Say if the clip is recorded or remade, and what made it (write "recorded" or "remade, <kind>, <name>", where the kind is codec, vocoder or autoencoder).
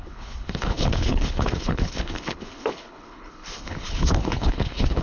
remade, codec, HILCodec